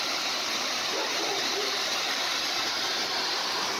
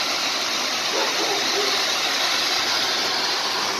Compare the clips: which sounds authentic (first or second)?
second